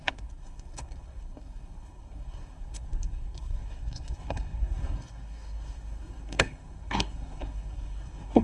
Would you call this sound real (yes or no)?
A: no